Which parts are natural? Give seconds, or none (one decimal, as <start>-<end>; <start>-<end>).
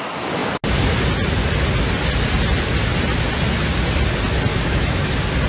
0.0-4.5; 5.1-5.5